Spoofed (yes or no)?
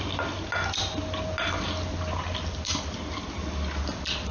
no